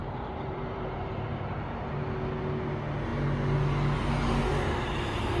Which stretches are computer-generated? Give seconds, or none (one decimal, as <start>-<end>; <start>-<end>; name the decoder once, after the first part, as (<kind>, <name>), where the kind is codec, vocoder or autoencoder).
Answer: 0.0-1.9 (vocoder, BigVGAN v2)